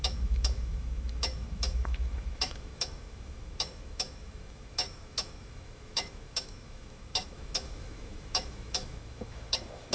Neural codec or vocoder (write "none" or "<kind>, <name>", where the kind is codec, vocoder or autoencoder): autoencoder, DAC-VAE